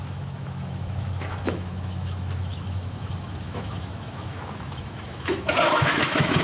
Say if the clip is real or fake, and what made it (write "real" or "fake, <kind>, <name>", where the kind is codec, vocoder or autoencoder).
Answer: fake, autoencoder, DAC-VAE